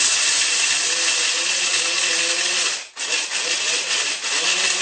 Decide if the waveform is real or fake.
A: real